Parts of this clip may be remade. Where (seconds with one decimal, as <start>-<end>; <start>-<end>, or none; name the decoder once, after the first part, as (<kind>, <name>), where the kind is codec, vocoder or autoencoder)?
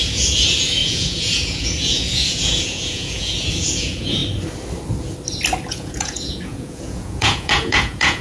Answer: 0.0-4.2 (vocoder, Vocos); 5.7-8.2